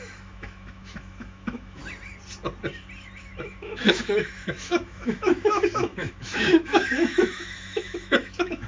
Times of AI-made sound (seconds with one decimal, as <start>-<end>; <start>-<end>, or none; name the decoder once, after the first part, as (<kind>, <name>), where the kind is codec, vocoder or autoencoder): 0.0-1.8 (autoencoder, DAC-VAE); 3.2-8.7